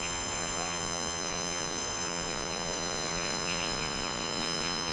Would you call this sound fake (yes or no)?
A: yes